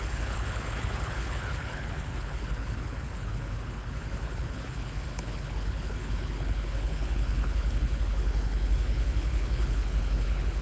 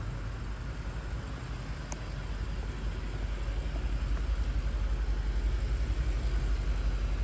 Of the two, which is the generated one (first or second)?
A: first